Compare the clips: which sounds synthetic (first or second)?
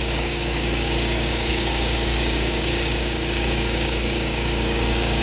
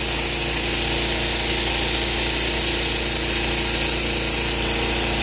first